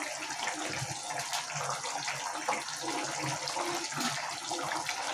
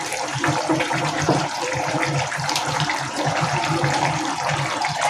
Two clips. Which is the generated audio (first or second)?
second